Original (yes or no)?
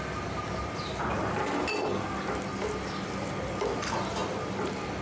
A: yes